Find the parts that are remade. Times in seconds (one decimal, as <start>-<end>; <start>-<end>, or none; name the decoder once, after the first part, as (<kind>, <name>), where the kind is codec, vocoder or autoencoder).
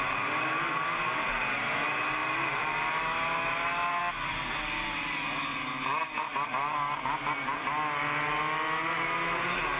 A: none